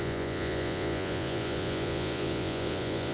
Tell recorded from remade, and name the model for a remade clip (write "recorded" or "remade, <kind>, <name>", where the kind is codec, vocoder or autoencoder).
remade, vocoder, Vocos